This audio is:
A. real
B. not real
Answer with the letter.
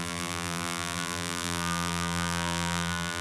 B